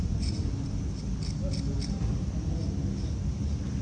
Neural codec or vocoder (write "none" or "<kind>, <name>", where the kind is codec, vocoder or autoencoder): none